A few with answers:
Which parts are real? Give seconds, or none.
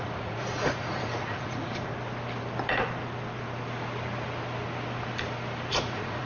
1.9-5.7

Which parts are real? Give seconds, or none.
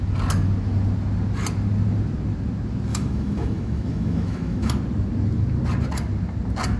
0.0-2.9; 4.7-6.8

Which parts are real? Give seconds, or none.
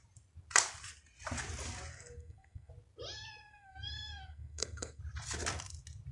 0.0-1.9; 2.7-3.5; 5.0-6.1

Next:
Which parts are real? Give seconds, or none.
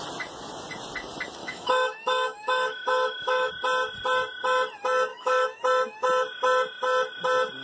0.0-1.4; 3.5-5.1; 5.6-7.6